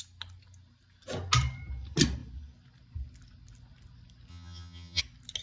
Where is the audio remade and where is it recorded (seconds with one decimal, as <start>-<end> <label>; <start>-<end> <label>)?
0.0-4.3 recorded; 4.3-5.0 remade; 5.0-5.4 recorded